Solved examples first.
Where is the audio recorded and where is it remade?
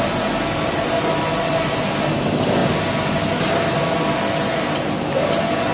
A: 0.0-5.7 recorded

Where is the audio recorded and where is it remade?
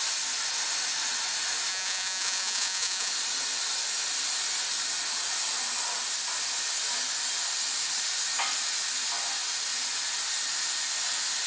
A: 0.0-1.7 recorded; 1.7-3.1 remade; 3.1-11.5 recorded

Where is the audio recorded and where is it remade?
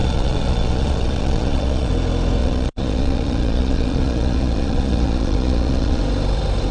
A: 0.0-1.9 remade; 1.9-2.4 recorded; 2.4-6.0 remade; 6.0-6.7 recorded